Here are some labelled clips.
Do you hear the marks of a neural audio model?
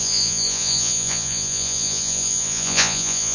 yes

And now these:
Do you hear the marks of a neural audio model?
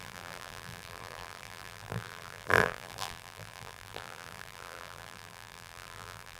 yes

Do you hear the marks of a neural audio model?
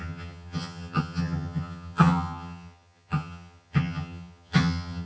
yes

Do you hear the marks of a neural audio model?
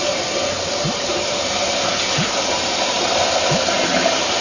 no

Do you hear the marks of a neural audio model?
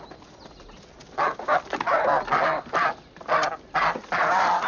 no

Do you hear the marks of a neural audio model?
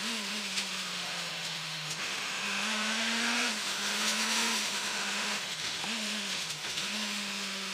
yes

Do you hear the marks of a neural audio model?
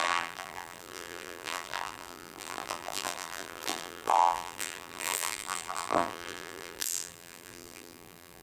yes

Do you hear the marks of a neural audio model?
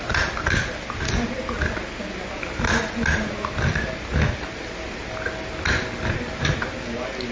no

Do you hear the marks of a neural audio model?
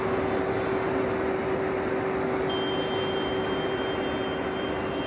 no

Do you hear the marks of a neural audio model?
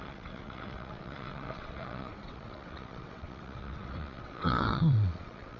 yes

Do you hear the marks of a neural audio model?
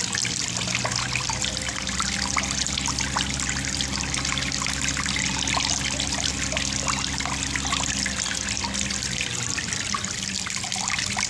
no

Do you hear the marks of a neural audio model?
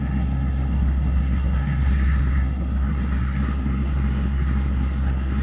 yes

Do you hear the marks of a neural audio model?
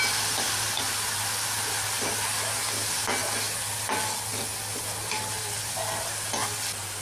no